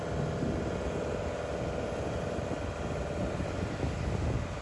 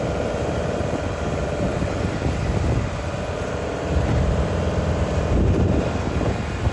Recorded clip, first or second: first